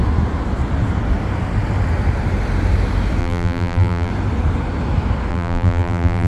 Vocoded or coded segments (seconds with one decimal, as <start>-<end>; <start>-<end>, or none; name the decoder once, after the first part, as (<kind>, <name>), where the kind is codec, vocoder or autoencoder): 3.2-4.1 (vocoder, BigVGAN v2); 5.3-6.3